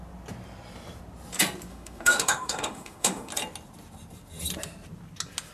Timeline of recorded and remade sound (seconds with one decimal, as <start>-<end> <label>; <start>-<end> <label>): 0.0-1.7 recorded; 1.7-3.3 remade; 3.3-5.5 recorded

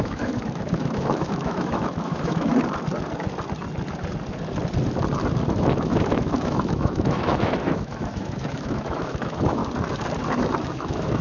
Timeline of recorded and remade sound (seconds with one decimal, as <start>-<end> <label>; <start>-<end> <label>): 0.0-2.5 remade; 2.5-5.5 recorded; 5.5-9.6 remade; 9.6-10.6 recorded; 10.6-11.2 remade

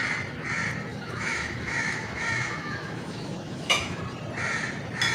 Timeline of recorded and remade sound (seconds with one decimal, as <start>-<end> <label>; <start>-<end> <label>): 0.0-0.9 recorded; 0.9-4.0 remade; 4.0-5.1 recorded

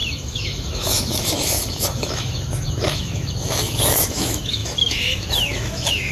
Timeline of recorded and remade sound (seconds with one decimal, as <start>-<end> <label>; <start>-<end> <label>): 0.0-6.1 remade